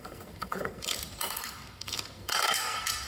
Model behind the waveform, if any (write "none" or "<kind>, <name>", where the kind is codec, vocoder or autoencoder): codec, SNAC